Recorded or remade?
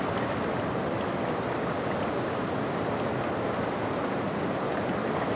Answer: recorded